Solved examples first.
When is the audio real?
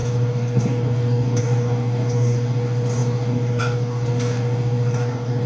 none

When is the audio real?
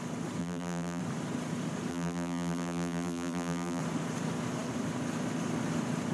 0.0-0.4; 1.0-1.9; 3.8-6.1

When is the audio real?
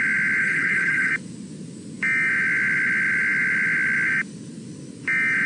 0.0-0.4; 1.1-5.5